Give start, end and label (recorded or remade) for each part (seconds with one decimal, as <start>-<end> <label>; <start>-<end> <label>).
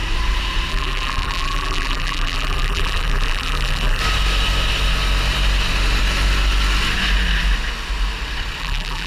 0.0-0.7 recorded; 0.7-4.0 remade; 4.0-8.6 recorded; 8.6-9.1 remade